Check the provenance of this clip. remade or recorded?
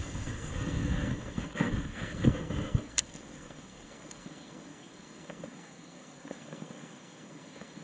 remade